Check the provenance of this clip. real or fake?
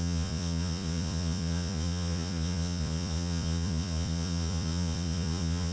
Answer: fake